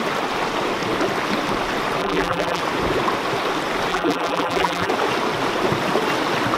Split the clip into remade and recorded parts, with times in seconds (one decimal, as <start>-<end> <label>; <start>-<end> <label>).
0.0-2.0 recorded; 2.0-2.6 remade; 2.6-3.9 recorded; 3.9-4.9 remade; 4.9-6.6 recorded